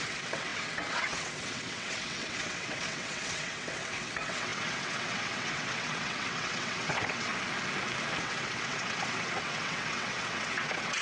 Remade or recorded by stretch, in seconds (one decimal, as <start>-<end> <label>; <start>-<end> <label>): 0.0-7.3 remade; 7.3-8.2 recorded; 8.2-11.0 remade